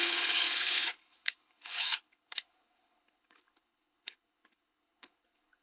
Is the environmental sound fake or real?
fake